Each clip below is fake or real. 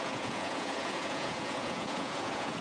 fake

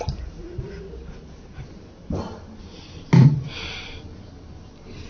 real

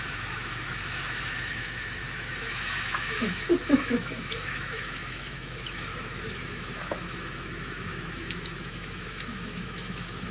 fake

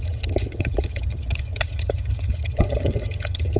fake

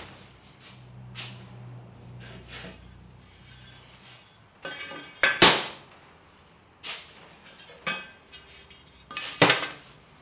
real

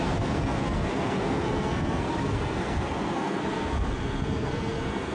fake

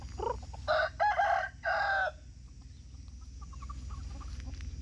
real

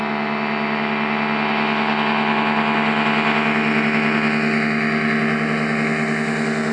real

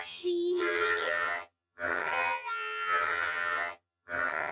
fake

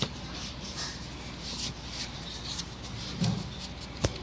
real